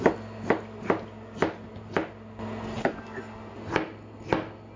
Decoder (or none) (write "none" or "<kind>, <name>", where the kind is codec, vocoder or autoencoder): none